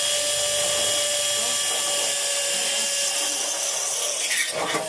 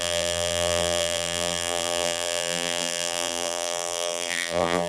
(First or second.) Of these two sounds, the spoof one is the second